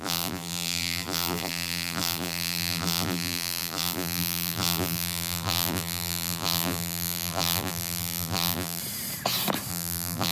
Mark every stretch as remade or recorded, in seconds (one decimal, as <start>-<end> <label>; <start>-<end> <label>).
0.0-8.8 remade; 8.8-9.7 recorded; 9.7-10.3 remade